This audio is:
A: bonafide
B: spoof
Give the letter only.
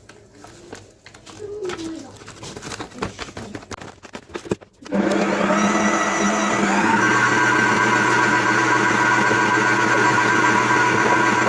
A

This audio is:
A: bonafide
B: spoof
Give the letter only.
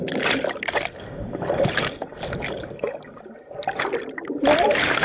A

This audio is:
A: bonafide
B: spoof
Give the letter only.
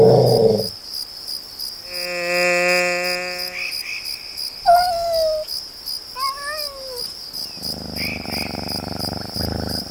A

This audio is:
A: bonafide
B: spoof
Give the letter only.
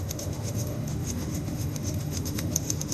B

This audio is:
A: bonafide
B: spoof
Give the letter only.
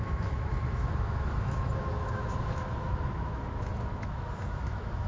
B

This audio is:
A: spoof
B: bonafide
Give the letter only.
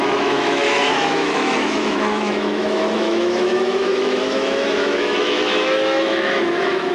A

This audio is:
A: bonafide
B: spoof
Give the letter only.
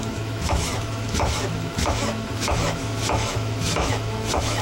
B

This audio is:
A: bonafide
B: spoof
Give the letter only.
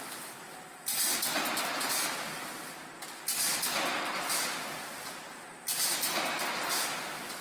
A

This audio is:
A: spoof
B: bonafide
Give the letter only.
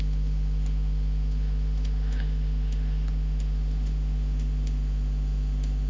A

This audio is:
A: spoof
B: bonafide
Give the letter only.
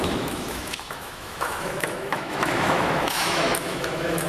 A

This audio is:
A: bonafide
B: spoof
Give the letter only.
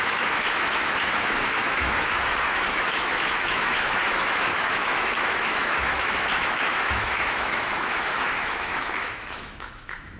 B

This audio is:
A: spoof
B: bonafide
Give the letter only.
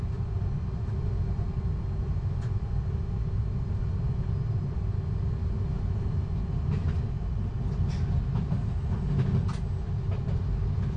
B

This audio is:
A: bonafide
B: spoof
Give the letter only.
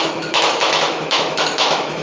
B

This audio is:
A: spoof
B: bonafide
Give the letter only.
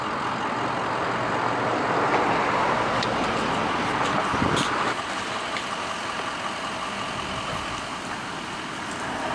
B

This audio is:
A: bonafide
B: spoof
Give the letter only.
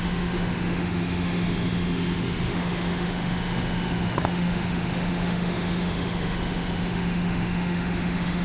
B